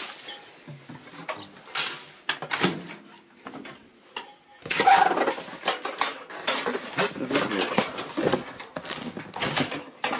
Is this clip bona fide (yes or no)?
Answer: yes